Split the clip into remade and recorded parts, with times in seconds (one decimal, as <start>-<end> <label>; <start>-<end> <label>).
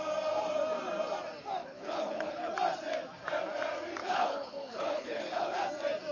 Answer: 0.0-1.6 recorded; 1.6-2.5 remade; 2.5-4.0 recorded; 4.0-5.6 remade; 5.6-6.1 recorded